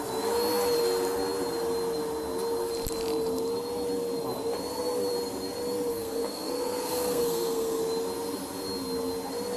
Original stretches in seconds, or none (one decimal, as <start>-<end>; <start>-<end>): 0.0-5.9; 7.8-9.6